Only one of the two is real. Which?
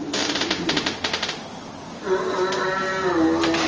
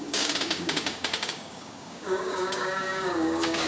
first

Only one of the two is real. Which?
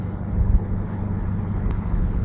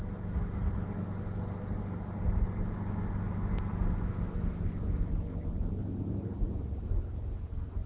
second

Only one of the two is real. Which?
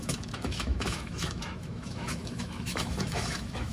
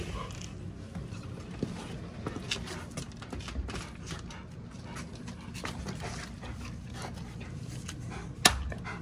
second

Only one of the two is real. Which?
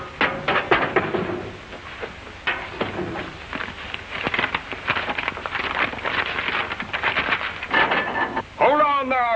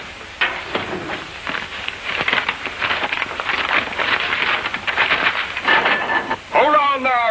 first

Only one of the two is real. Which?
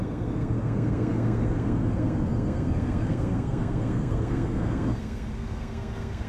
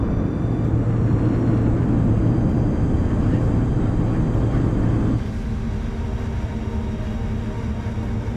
second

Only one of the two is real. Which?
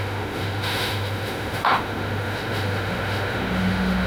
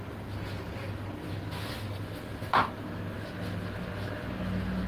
second